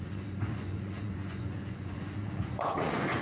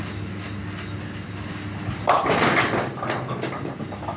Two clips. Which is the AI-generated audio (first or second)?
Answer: first